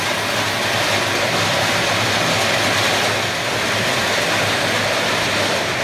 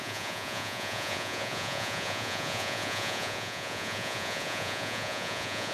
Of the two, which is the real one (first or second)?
first